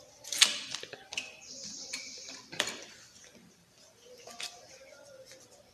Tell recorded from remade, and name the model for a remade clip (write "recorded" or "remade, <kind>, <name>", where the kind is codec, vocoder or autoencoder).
remade, vocoder, BigVGAN v2